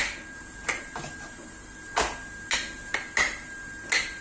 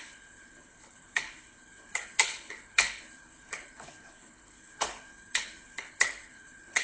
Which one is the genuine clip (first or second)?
first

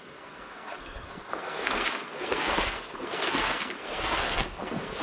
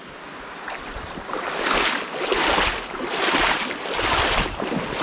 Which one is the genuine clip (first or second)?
second